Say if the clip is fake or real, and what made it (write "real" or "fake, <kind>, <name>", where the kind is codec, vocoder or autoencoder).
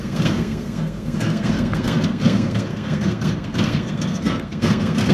fake, codec, SNAC